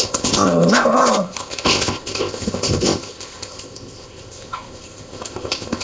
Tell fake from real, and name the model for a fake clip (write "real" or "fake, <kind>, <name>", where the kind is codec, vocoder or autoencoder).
fake, codec, ZipCodec